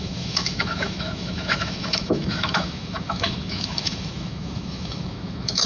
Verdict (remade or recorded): remade